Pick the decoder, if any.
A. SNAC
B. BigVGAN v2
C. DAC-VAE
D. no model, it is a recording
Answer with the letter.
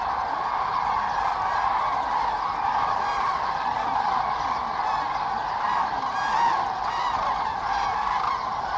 D